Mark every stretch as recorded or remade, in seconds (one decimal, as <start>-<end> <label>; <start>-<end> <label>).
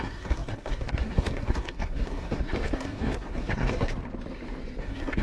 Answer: 0.0-3.9 remade; 3.9-4.8 recorded; 4.8-5.2 remade